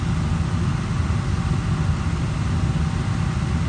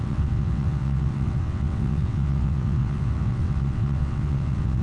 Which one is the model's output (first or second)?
second